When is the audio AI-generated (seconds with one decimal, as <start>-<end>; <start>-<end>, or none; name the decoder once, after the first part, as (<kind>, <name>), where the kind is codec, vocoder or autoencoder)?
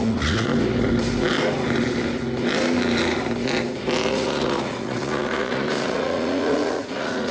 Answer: 0.0-0.5 (vocoder, Vocos); 4.1-7.3